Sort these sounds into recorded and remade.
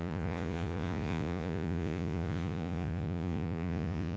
remade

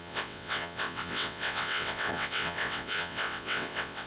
remade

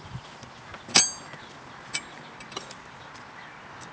recorded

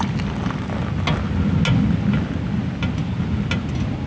recorded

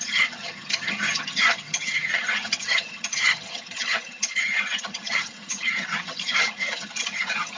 remade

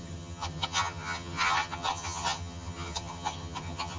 remade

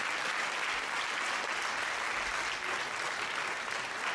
recorded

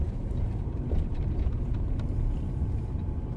remade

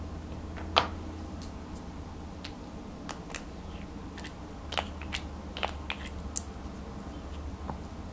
recorded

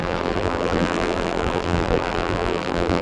remade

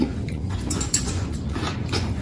remade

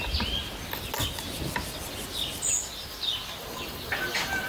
recorded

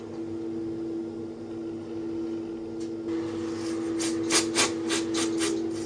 recorded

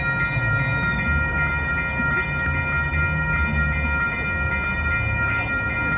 recorded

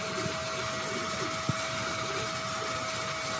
recorded